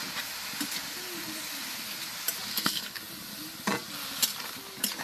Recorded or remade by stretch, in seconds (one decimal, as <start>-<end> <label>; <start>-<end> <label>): 0.0-2.5 recorded; 2.5-3.0 remade; 3.0-5.0 recorded